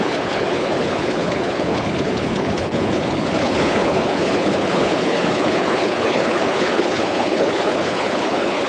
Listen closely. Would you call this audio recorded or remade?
remade